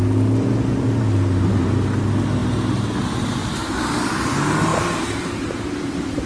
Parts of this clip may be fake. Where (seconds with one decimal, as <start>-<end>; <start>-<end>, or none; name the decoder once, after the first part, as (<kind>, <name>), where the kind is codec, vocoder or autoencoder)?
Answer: 0.4-1.6 (vocoder, BigVGAN v2); 3.4-4.1; 4.7-6.3